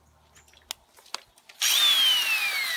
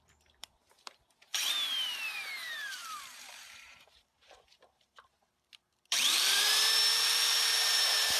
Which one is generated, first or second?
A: second